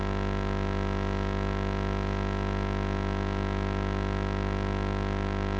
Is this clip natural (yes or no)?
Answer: yes